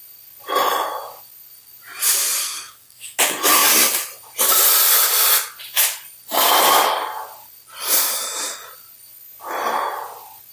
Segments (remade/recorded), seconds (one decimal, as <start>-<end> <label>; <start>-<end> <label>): 0.0-2.4 recorded; 2.4-3.2 remade; 3.2-10.5 recorded